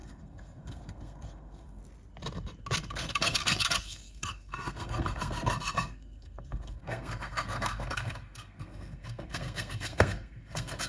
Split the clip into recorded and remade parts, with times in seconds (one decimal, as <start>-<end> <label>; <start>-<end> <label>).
0.0-1.8 remade; 1.8-2.8 recorded; 2.8-10.9 remade